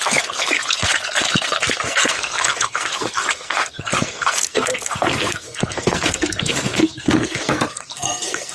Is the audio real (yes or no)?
no